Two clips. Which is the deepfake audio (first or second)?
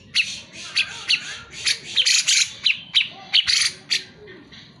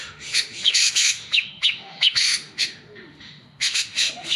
second